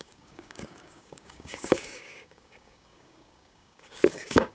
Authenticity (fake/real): fake